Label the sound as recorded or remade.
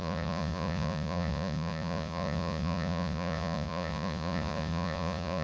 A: remade